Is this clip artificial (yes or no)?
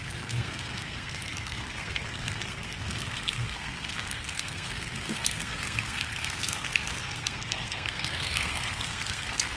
yes